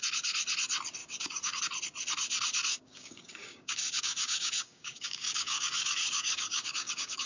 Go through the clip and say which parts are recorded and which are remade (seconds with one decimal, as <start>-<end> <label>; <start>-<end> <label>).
0.0-1.0 recorded; 1.0-1.6 remade; 1.6-2.7 recorded; 2.7-7.3 remade